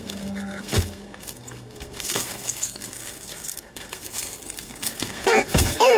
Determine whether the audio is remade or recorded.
remade